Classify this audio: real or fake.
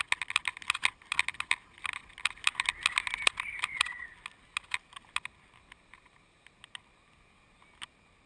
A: real